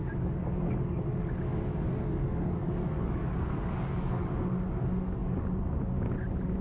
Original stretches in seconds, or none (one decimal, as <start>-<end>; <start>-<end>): 1.0-1.5; 4.3-6.6